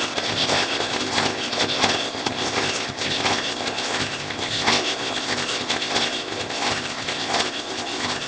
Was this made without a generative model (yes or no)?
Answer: no